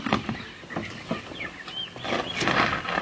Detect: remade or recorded recorded